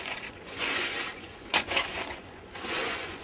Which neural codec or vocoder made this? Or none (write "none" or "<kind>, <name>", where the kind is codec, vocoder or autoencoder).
vocoder, Vocos